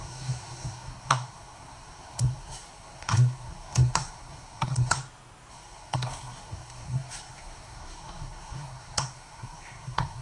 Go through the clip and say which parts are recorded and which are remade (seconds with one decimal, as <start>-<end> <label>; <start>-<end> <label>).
0.0-5.0 remade; 5.0-5.5 recorded; 5.5-10.2 remade

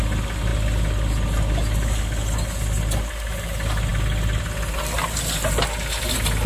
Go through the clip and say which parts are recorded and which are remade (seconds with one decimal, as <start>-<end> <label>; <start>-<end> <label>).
0.0-6.5 recorded

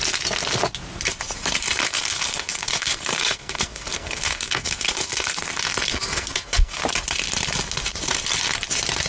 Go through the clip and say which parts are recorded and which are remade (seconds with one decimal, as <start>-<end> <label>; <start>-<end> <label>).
0.0-1.8 recorded; 1.8-5.5 remade; 5.5-5.9 recorded; 5.9-6.8 remade; 6.8-9.1 recorded